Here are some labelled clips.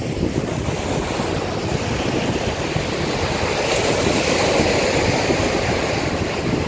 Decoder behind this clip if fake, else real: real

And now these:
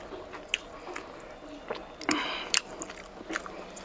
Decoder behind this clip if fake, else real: real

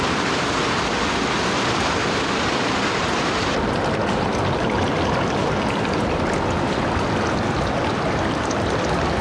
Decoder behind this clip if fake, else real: real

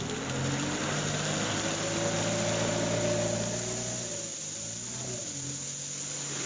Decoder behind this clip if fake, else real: real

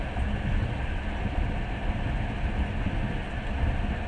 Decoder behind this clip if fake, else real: real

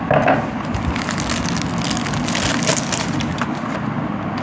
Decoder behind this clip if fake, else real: real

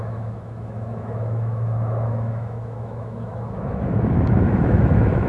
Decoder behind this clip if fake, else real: fake, autoencoder, DAC-VAE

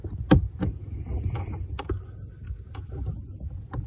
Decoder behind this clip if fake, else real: real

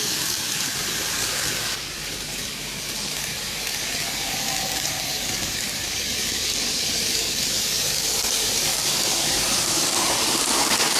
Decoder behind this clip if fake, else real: fake, codec, DAC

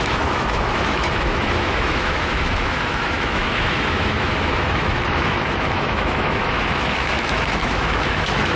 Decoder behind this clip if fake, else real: fake, autoencoder, DAC-VAE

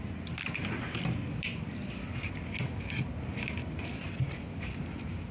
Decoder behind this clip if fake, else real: real